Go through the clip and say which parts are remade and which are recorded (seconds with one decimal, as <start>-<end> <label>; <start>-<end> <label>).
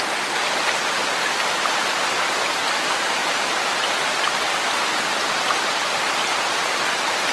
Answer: 0.0-7.3 recorded